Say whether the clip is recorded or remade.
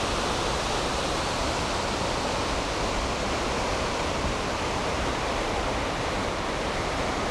recorded